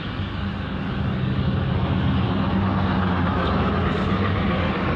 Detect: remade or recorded remade